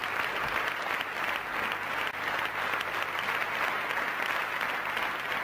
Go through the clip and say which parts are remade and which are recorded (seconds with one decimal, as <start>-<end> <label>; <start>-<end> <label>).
0.0-5.4 recorded